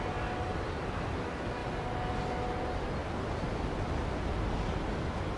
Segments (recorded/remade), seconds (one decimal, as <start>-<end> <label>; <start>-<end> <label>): 0.0-5.4 recorded